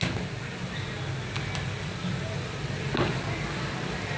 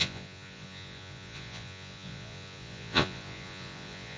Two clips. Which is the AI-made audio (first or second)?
second